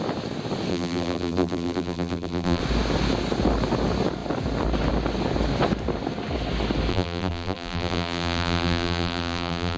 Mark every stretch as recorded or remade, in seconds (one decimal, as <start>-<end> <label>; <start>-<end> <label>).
0.0-0.7 recorded; 0.7-2.6 remade; 2.6-6.9 recorded; 6.9-9.8 remade